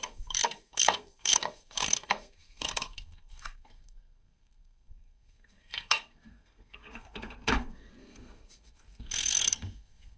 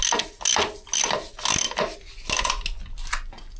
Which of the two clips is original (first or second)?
second